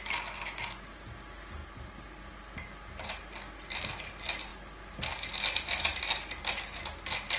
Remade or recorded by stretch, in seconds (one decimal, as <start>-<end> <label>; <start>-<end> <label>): 0.0-7.4 recorded